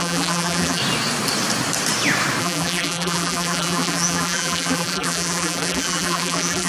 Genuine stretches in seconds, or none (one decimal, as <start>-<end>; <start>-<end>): 0.8-2.4